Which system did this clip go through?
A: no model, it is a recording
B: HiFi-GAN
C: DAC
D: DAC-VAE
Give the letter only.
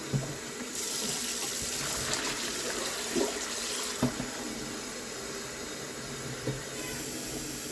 A